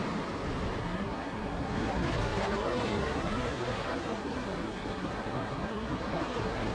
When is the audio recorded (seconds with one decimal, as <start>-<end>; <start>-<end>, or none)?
0.0-0.8